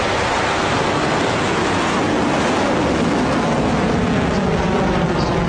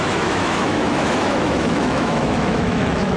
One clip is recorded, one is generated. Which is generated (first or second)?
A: second